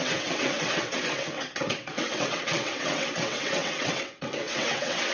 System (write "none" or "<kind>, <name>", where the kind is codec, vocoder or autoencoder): vocoder, WaveNeXt